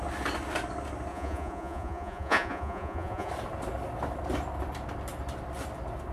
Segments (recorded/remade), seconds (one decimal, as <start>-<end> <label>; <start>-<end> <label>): 0.0-1.1 recorded; 1.1-3.3 remade; 3.3-6.1 recorded